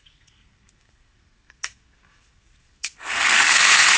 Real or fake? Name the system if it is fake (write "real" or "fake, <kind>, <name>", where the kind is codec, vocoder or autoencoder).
fake, codec, SNAC